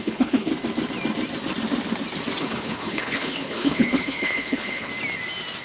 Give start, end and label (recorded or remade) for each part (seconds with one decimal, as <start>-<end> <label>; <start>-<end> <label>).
0.0-0.5 remade; 0.5-2.4 recorded; 2.4-4.9 remade; 4.9-5.6 recorded